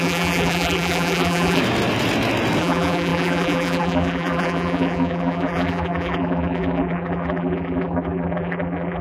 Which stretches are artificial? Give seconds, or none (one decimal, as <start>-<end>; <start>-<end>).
0.0-1.6; 2.6-9.0